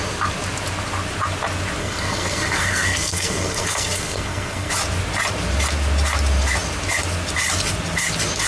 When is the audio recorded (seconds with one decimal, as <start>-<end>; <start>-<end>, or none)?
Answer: 0.0-1.8; 4.7-8.5